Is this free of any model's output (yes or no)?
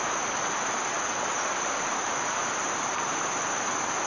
yes